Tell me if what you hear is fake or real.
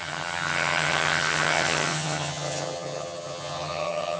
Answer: fake